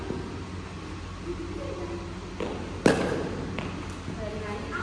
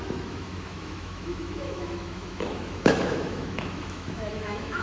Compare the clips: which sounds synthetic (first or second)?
second